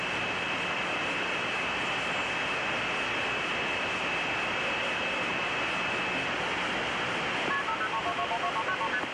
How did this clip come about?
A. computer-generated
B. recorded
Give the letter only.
B